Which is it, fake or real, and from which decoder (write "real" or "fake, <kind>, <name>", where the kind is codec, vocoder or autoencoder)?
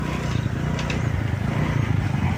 real